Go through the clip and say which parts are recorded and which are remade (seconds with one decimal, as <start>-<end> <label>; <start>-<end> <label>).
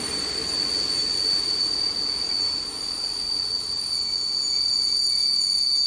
0.0-5.9 recorded